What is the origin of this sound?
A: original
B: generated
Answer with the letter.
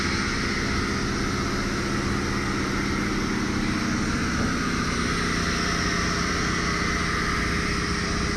A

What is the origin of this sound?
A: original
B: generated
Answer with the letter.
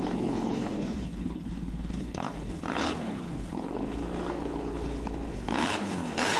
B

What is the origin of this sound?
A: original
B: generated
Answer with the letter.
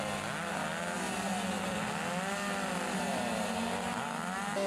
A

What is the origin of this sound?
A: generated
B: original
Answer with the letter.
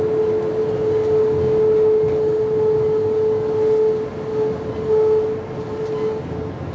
B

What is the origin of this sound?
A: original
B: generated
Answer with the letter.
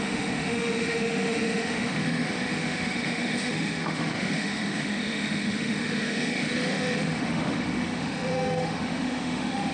B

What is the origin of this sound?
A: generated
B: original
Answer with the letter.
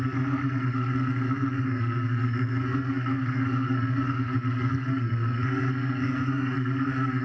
A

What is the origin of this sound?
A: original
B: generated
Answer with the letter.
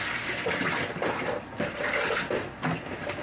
A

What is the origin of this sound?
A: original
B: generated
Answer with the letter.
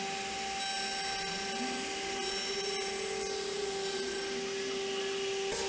A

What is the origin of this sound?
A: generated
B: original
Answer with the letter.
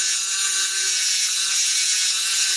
A